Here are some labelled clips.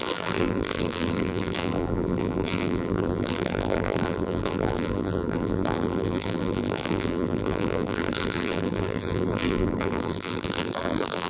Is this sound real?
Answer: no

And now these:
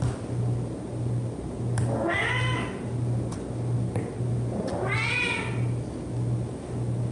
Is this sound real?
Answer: yes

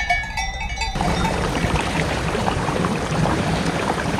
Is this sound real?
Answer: no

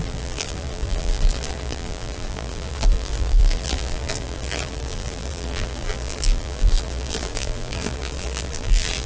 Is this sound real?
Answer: no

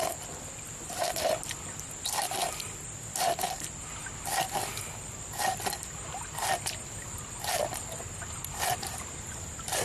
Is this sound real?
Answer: no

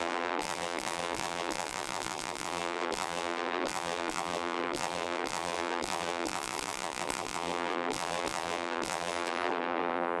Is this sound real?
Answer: no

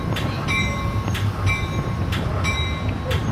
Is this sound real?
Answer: no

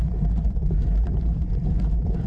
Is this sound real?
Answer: no